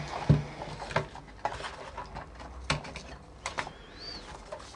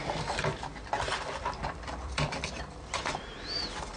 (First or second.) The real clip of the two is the first